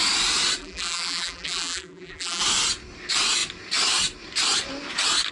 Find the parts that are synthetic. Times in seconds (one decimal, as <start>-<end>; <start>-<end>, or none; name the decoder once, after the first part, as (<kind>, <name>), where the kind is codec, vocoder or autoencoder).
0.6-2.4 (vocoder, BigVGAN v2)